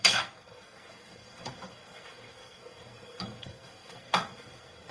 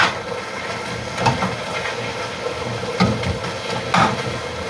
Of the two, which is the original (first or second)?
second